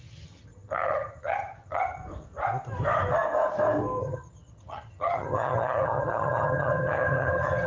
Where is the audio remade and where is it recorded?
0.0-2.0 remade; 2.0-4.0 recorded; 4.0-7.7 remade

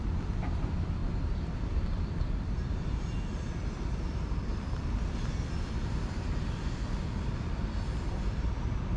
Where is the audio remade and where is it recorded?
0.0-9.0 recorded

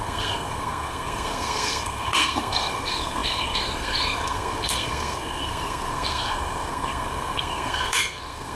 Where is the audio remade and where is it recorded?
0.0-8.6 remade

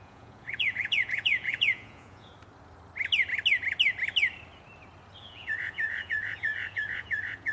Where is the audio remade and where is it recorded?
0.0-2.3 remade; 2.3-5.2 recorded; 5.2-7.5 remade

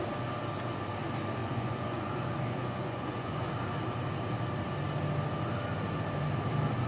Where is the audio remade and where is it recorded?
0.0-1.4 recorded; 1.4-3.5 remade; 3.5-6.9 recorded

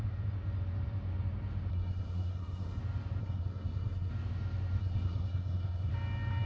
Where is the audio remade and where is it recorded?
0.0-1.7 recorded; 1.7-2.8 remade; 2.8-3.2 recorded; 3.2-4.1 remade; 4.1-4.8 recorded; 4.8-5.9 remade; 5.9-6.5 recorded